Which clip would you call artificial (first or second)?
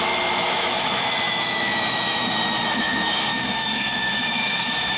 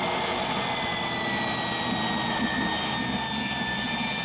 first